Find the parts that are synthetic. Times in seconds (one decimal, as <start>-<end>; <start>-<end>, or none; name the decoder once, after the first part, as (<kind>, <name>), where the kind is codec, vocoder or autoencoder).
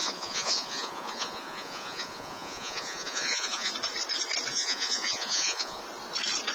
0.0-3.7 (vocoder, Vocos); 4.5-5.8